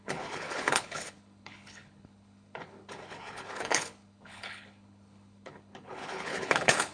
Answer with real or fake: fake